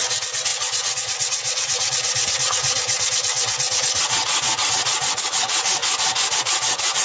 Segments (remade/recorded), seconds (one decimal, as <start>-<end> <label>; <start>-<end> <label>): 0.0-5.8 remade; 5.8-6.4 recorded; 6.4-7.0 remade